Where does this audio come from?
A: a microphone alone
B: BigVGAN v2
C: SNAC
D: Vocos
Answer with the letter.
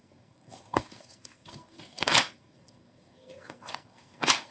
C